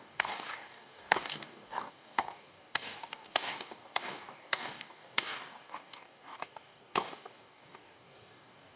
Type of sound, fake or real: fake